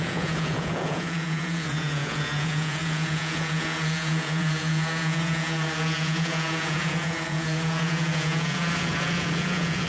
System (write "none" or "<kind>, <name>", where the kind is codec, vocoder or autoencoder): vocoder, Vocos